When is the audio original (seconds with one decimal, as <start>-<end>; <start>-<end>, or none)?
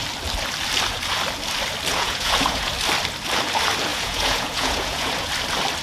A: 0.0-1.9; 2.7-3.9; 5.3-5.8